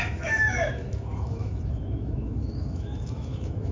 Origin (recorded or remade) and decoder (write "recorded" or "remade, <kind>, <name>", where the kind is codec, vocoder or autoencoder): remade, autoencoder, DAC-VAE